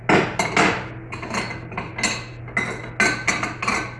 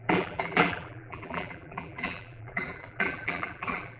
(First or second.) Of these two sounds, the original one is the first